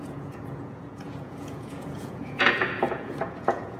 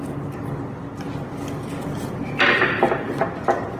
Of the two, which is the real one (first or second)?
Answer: second